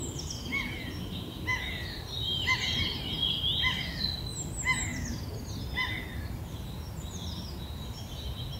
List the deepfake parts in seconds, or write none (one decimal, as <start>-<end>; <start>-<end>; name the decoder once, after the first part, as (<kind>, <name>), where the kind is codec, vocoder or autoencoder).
1.5-3.4 (vocoder, BigVGAN v2)